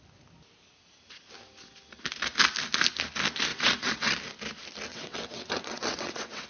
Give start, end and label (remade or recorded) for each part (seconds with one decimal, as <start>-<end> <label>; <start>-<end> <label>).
0.0-3.5 recorded; 3.5-4.2 remade; 4.2-4.9 recorded; 4.9-6.5 remade